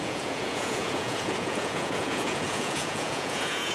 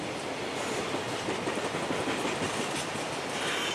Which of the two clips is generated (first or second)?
first